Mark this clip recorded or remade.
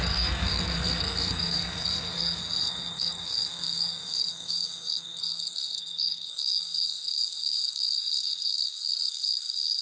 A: remade